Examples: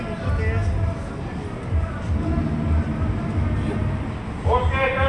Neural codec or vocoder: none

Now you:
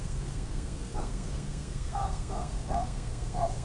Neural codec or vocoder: codec, SNAC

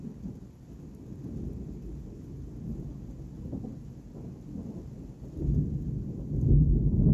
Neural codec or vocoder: none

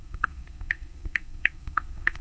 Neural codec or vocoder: codec, SNAC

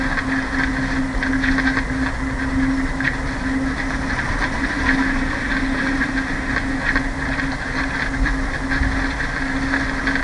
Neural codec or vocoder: none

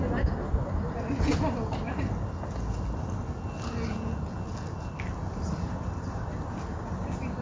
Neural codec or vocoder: none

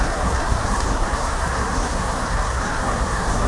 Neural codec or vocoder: codec, SNAC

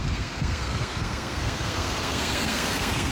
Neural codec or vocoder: codec, SNAC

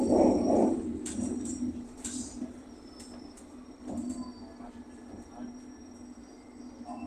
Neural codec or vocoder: none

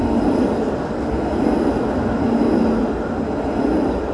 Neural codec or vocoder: none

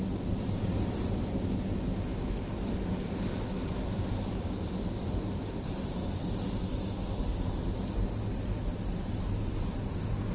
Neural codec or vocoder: none